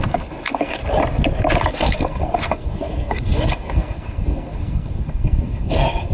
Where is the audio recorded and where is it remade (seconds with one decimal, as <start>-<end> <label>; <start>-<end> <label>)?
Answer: 0.0-0.8 remade; 0.8-1.7 recorded; 1.7-6.1 remade